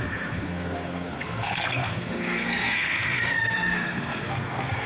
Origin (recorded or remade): remade